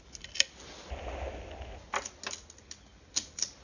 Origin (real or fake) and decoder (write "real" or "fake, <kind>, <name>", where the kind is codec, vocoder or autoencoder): real